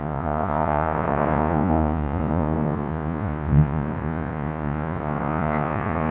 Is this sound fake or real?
fake